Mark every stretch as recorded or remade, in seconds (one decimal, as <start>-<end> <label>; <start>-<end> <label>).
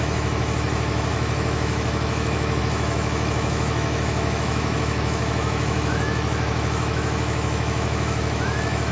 0.0-8.9 remade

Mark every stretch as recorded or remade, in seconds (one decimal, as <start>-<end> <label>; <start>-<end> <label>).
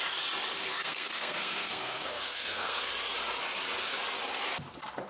0.0-0.7 recorded; 0.7-2.9 remade; 2.9-5.1 recorded